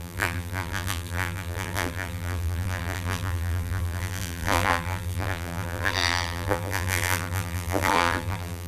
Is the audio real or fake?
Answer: fake